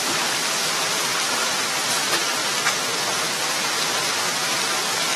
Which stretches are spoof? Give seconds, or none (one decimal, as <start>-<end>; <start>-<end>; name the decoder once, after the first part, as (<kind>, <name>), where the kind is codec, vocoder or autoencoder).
none